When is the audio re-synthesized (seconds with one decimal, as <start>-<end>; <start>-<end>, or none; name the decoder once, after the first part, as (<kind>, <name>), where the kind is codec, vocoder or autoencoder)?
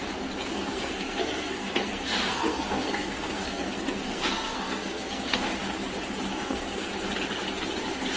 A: 0.5-5.4 (codec, SNAC); 6.3-6.9